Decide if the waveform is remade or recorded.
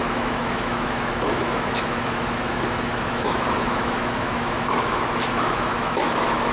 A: remade